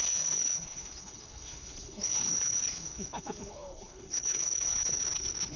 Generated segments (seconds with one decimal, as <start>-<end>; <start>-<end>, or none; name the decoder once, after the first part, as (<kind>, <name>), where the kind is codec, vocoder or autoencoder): 0.0-5.6 (codec, HILCodec)